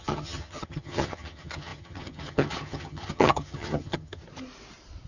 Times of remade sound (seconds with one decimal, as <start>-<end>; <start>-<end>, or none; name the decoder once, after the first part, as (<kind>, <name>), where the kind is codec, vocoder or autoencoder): 0.0-4.2 (vocoder, HiFi-GAN)

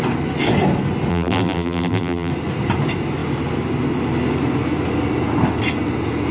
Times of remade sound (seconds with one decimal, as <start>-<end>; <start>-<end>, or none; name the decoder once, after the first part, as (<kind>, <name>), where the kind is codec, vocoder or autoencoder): 1.1-2.3 (vocoder, BigVGAN v2)

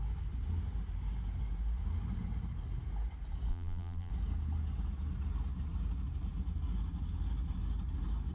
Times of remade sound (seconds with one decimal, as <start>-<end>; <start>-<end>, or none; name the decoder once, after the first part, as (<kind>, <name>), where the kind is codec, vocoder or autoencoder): 3.5-4.1 (vocoder, BigVGAN v2)

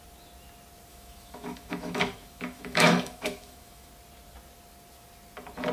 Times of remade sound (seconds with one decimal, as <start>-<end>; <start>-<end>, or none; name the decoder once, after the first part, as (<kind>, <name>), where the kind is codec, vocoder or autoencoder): 0.9-3.9 (autoencoder, DAC-VAE)

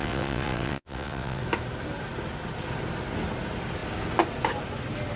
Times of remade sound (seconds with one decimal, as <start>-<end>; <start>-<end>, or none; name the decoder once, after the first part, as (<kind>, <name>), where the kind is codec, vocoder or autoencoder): 0.0-1.4 (vocoder, WaveNeXt)